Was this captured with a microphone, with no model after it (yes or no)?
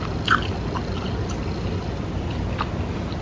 yes